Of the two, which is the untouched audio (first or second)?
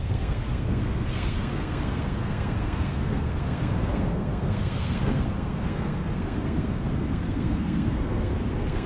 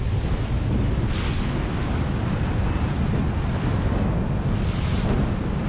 second